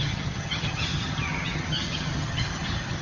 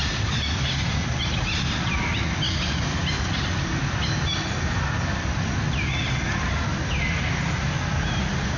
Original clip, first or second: second